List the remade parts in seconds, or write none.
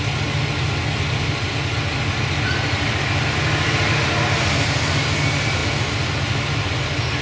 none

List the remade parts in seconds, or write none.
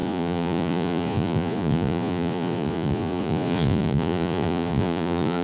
0.0-5.4 (vocoder, Vocos)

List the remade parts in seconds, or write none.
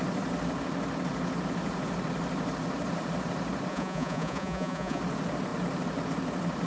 3.7-5.0 (vocoder, Vocos)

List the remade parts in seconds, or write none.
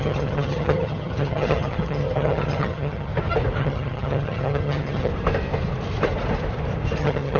0.0-3.1 (vocoder, HiFi-GAN); 3.6-5.1; 7.0-7.4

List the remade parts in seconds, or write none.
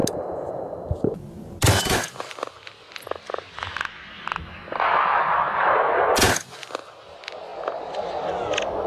none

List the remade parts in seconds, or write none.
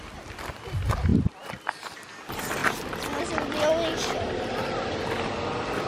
1.1-2.2 (vocoder, BigVGAN v2); 2.6-5.0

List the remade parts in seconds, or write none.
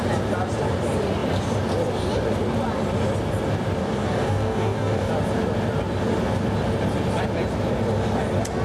3.8-5.1 (codec, DAC)